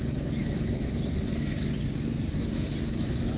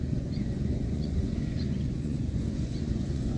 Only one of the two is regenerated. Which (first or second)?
second